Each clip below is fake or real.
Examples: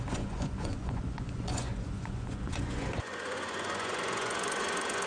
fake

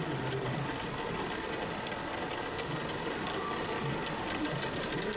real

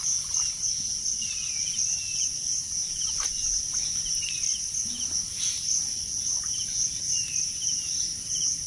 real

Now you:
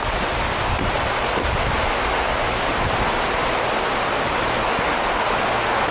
real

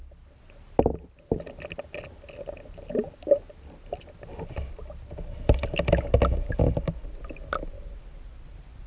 real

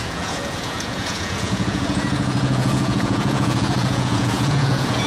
fake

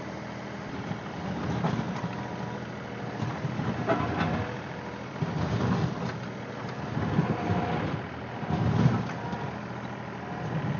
real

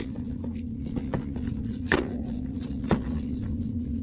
fake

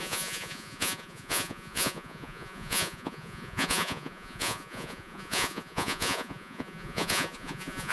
fake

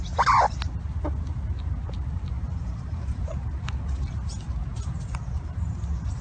real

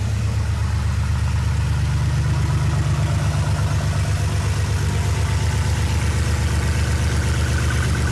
real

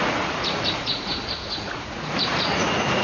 fake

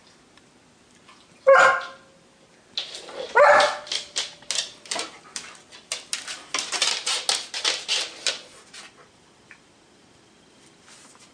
real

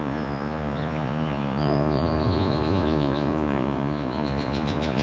fake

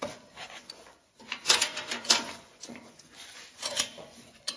fake